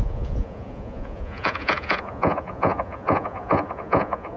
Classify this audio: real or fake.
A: fake